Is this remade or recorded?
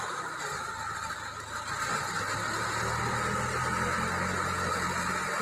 recorded